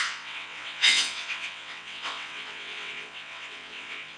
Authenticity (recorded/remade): remade